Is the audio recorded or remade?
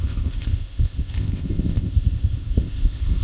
remade